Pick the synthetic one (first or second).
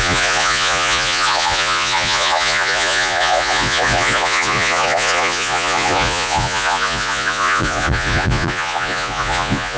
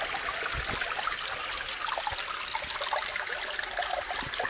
first